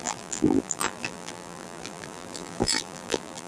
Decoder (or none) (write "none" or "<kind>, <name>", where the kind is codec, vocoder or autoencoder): vocoder, BigVGAN v2